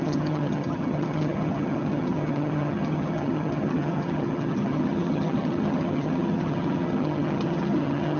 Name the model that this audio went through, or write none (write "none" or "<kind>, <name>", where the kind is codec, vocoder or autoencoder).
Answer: vocoder, HiFi-GAN